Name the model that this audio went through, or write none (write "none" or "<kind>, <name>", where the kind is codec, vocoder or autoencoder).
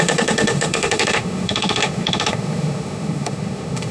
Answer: autoencoder, DAC-VAE